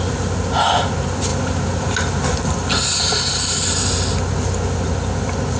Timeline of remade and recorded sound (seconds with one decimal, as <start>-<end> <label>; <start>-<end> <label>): 0.0-5.6 recorded

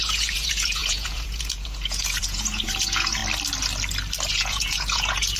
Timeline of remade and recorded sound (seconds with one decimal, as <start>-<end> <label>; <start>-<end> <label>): 0.0-3.2 remade; 3.2-4.3 recorded; 4.3-5.4 remade

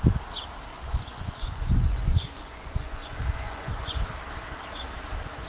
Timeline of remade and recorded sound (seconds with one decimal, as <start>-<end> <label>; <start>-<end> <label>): 0.0-0.7 recorded; 0.7-4.0 remade; 4.0-5.5 recorded

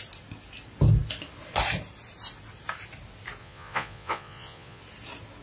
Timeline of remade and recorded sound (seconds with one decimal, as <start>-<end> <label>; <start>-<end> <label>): 0.0-3.4 recorded; 3.4-4.8 remade; 4.8-5.4 recorded

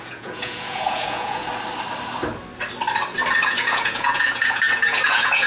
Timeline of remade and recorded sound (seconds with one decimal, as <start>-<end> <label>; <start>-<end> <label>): 0.0-1.4 remade; 1.4-3.4 recorded; 3.4-5.5 remade

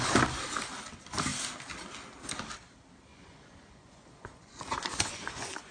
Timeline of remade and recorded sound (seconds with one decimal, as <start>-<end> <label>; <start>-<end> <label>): 0.0-3.1 recorded; 3.1-5.7 remade

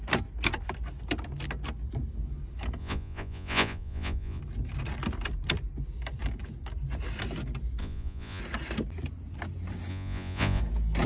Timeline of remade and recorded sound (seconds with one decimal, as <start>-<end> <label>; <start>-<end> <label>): 0.0-2.8 recorded; 2.8-4.4 remade; 4.4-7.8 recorded; 7.8-8.4 remade; 8.4-9.9 recorded; 9.9-10.6 remade; 10.6-11.1 recorded

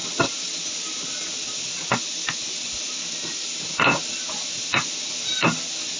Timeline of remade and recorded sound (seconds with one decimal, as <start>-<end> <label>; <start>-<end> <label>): 0.0-6.0 recorded